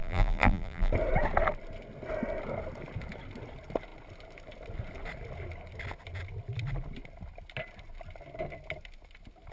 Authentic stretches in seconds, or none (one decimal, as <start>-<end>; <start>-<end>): 0.9-9.5